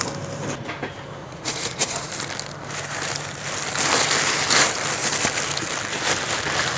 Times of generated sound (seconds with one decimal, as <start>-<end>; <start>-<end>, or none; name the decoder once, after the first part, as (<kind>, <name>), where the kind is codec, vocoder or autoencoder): 1.2-2.1 (vocoder, Vocos)

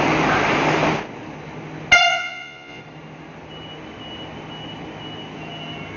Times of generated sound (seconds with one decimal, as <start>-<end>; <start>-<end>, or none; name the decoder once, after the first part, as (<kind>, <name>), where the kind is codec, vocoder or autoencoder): 2.1-2.8 (vocoder, Vocos)

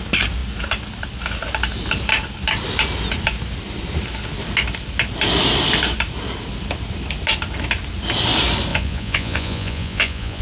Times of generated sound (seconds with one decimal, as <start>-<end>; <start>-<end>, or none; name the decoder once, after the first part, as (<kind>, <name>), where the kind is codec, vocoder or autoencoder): 8.7-10.4 (vocoder, Vocos)

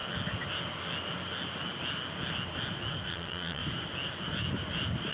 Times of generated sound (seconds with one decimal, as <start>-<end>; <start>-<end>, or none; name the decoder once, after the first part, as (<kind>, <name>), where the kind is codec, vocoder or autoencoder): 3.1-3.6 (vocoder, Vocos)

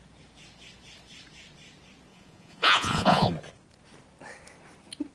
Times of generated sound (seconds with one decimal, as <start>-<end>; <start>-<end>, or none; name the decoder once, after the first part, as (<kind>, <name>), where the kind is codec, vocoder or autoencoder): 2.1-3.3 (vocoder, Vocos)

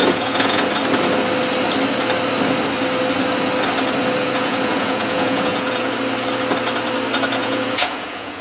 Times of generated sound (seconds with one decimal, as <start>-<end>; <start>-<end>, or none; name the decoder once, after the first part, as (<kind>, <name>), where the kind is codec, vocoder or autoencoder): 0.0-0.6 (vocoder, Vocos); 4.2-5.9; 7.4-8.4